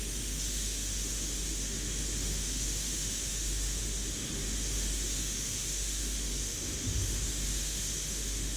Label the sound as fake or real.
fake